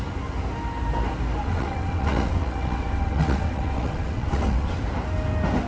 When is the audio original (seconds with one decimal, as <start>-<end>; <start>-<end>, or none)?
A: 0.0-1.4; 4.8-5.7